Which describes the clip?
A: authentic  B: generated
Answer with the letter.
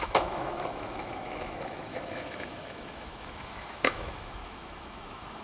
B